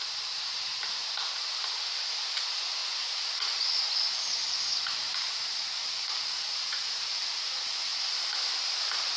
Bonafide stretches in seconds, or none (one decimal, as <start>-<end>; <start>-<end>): 0.0-2.8; 3.6-5.2; 7.8-9.2